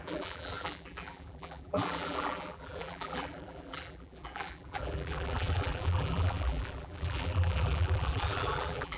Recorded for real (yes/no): no